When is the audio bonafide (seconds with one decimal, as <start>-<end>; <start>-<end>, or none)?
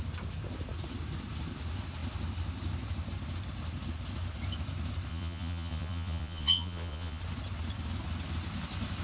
0.0-5.1; 7.2-9.0